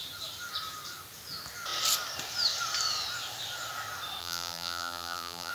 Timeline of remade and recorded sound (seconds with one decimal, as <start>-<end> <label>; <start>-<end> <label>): 0.0-4.2 recorded; 4.2-5.5 remade